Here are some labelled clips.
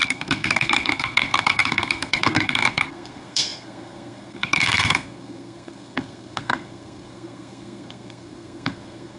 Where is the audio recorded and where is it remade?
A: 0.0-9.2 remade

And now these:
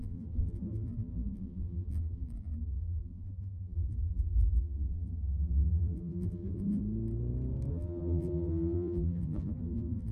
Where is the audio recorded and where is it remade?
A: 0.0-6.8 remade; 6.8-7.7 recorded; 7.7-10.1 remade

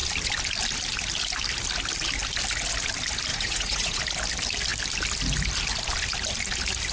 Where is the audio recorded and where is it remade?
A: 0.0-3.3 recorded; 3.3-4.0 remade; 4.0-6.9 recorded